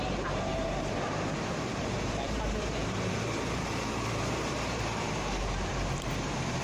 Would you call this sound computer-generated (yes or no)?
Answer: yes